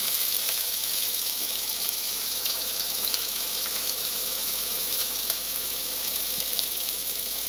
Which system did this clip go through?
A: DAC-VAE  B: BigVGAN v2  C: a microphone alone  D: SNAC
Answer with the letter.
A